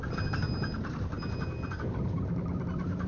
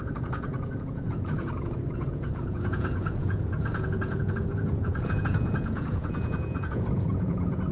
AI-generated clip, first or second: second